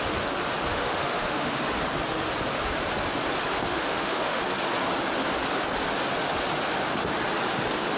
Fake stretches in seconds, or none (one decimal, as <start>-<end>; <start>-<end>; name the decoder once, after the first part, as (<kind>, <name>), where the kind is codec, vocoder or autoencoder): 0.7-1.6 (autoencoder, DAC-VAE); 3.7-4.4